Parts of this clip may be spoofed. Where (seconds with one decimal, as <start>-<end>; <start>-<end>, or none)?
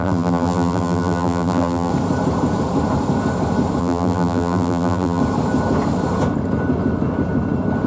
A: 0.0-1.9; 3.8-5.2